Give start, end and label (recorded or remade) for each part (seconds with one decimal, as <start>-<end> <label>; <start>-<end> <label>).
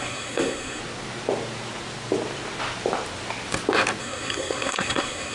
0.0-0.8 remade; 0.8-4.0 recorded; 4.0-5.3 remade